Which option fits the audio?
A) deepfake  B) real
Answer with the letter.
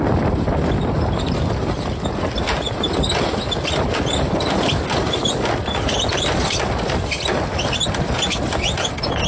B